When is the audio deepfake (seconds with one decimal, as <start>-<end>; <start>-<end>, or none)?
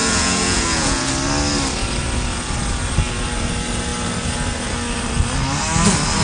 0.0-1.1